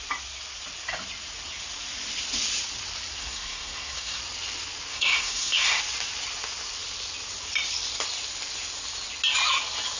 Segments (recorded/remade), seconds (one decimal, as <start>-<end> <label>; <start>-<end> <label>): 0.0-3.2 recorded; 3.2-4.2 remade; 4.2-4.9 recorded; 4.9-5.8 remade; 5.8-10.0 recorded